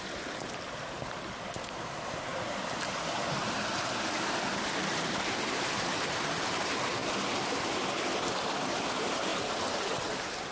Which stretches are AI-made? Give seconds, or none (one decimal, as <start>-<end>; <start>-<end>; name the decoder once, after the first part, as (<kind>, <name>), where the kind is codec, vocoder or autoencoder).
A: none